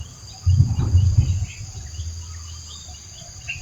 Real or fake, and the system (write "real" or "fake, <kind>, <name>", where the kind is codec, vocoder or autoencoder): real